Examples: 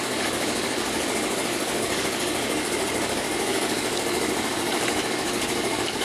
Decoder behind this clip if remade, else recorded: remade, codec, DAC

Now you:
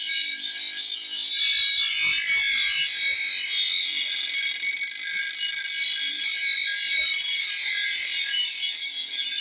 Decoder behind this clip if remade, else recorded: recorded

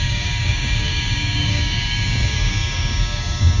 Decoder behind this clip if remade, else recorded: remade, codec, DAC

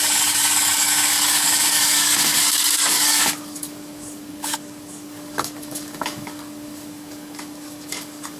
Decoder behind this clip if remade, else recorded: remade, codec, DAC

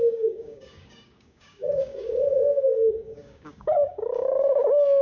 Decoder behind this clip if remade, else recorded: remade, codec, DAC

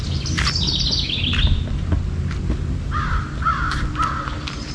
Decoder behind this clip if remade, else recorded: recorded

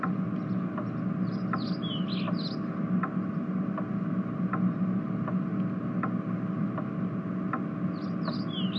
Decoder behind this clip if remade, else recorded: recorded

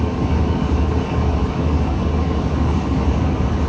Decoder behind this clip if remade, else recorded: remade, codec, DAC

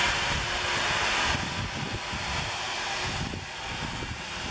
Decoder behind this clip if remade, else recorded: recorded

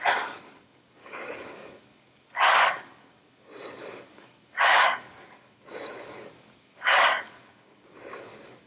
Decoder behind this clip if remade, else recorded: remade, codec, DAC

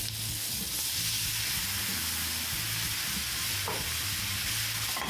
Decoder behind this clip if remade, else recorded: recorded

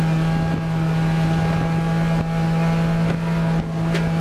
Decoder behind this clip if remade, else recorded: recorded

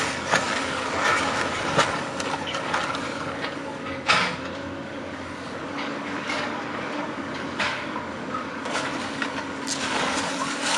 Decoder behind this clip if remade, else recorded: remade, codec, DAC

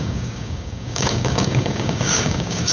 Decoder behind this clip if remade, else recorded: remade, codec, DAC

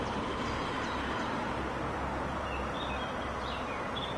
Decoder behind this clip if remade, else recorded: recorded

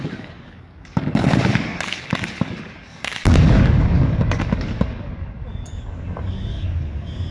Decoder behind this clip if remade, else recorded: remade, codec, DAC